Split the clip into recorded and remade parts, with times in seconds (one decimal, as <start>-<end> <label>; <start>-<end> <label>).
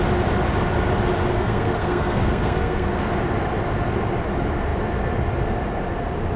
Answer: 0.0-1.3 recorded; 1.3-3.0 remade; 3.0-6.4 recorded